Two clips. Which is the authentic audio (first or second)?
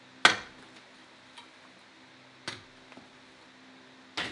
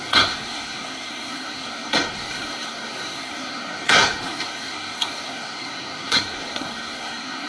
first